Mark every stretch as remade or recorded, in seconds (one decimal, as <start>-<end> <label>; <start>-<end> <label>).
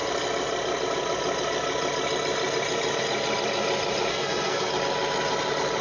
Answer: 0.0-4.1 recorded; 4.1-4.7 remade; 4.7-5.8 recorded